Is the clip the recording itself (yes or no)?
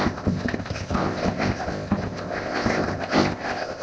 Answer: no